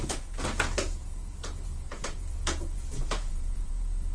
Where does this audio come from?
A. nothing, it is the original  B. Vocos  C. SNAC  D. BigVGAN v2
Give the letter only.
B